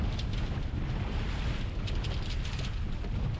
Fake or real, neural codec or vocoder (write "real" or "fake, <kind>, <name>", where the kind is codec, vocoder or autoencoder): real